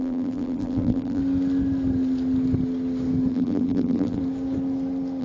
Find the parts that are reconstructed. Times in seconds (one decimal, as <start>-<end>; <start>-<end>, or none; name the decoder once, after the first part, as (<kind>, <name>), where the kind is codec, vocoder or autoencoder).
0.0-1.2 (vocoder, BigVGAN v2); 3.3-4.2